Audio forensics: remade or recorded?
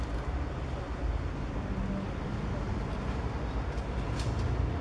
recorded